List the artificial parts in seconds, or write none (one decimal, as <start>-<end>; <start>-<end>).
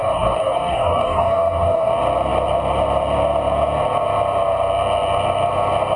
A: 0.0-1.9